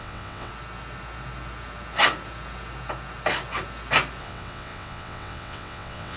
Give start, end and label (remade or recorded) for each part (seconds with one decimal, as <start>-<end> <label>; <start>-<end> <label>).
0.0-0.5 remade; 0.5-4.2 recorded; 4.2-6.2 remade